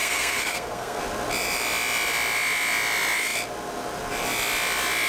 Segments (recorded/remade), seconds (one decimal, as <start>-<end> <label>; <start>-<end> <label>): 0.0-1.0 remade; 1.0-5.1 recorded